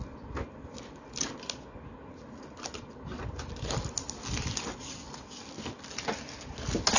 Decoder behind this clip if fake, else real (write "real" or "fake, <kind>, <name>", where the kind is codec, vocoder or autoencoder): real